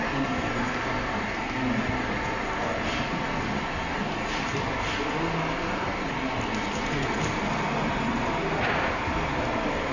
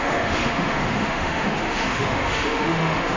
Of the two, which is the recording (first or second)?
first